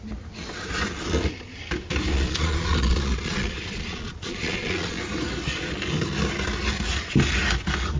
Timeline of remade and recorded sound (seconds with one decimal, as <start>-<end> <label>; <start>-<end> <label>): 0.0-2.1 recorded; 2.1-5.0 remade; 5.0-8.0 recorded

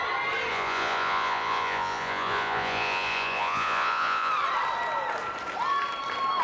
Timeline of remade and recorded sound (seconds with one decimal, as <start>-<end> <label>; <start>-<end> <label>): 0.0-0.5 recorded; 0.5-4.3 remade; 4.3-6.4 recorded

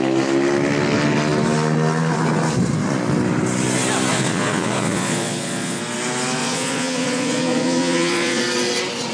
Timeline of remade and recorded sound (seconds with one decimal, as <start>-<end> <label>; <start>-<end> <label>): 0.0-4.1 recorded; 4.1-5.8 remade; 5.8-6.4 recorded; 6.4-8.4 remade; 8.4-9.1 recorded

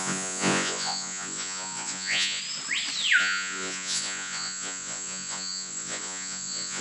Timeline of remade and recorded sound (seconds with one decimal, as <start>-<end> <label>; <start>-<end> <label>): 0.0-2.4 remade; 2.4-3.2 recorded; 3.2-6.8 remade

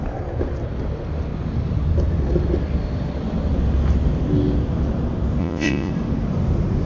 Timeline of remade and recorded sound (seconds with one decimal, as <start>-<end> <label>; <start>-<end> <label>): 0.0-5.4 recorded; 5.4-5.9 remade; 5.9-6.9 recorded

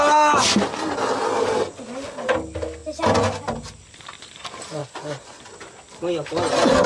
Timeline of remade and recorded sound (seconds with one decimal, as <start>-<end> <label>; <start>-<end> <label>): 0.0-4.8 recorded; 4.8-5.4 remade; 5.4-6.9 recorded

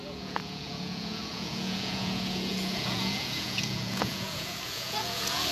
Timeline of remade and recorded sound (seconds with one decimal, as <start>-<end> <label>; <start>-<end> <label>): 0.0-5.5 remade